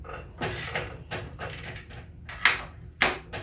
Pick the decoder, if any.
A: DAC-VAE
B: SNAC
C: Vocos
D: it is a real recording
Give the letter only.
D